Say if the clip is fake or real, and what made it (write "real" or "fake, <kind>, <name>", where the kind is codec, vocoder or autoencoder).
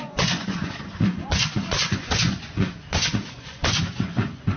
fake, vocoder, Vocos